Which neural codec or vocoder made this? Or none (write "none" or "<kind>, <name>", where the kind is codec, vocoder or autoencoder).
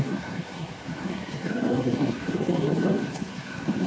codec, SNAC